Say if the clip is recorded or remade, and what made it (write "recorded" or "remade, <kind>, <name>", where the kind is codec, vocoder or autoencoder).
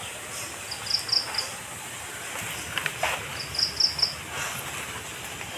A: recorded